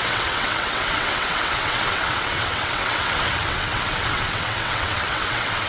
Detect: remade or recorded remade